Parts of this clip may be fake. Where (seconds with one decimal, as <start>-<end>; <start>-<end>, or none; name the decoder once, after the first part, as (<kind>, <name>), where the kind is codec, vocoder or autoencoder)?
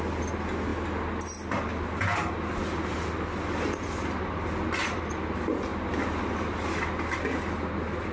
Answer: none